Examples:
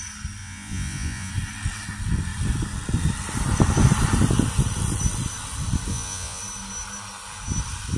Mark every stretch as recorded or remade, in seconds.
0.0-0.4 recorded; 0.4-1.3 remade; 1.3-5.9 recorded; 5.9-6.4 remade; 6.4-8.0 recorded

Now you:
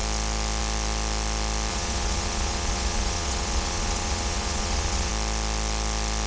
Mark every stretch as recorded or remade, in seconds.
0.0-1.7 recorded; 1.7-5.1 remade; 5.1-6.3 recorded

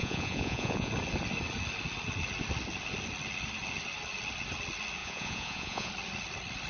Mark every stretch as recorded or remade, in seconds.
0.0-0.9 remade; 0.9-5.0 recorded; 5.0-5.9 remade; 5.9-6.7 recorded

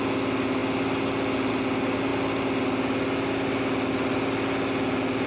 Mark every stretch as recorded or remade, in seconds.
0.0-5.3 recorded

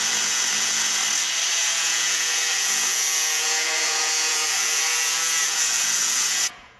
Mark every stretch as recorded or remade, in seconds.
0.0-1.0 remade; 1.0-1.5 recorded; 1.5-6.8 remade